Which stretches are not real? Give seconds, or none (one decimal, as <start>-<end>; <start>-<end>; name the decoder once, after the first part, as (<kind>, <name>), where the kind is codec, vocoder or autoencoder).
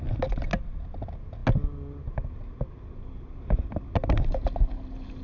none